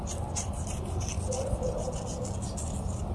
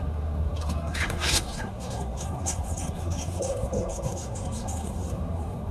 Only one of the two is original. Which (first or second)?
first